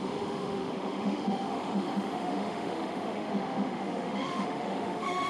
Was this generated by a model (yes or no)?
yes